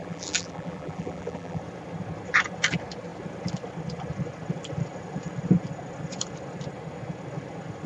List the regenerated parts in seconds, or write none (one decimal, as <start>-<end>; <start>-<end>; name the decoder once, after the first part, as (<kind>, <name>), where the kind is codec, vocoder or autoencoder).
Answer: 0.0-1.6 (vocoder, BigVGAN v2)